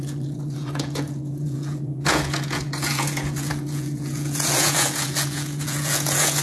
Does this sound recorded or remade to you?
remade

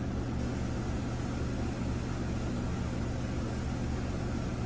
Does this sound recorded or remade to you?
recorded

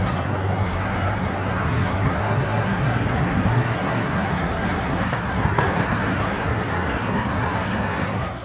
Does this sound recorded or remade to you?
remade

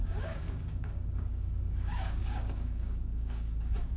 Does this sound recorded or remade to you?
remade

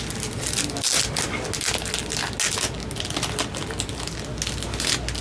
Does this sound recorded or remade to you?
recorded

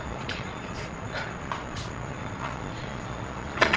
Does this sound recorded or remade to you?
remade